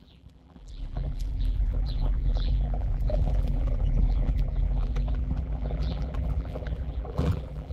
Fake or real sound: fake